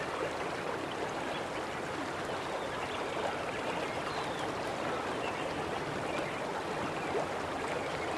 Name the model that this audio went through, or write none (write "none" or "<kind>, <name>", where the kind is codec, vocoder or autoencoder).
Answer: none